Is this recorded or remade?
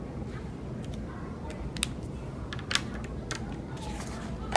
recorded